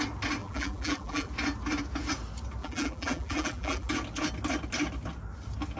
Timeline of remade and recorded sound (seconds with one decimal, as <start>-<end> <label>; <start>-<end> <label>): 0.0-0.4 recorded; 0.4-1.3 remade; 1.3-2.6 recorded; 2.6-3.9 remade; 3.9-5.8 recorded